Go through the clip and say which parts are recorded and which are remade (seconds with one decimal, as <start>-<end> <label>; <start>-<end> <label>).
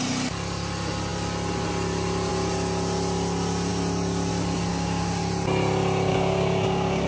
0.0-4.7 recorded; 4.7-5.2 remade; 5.2-6.1 recorded; 6.1-7.1 remade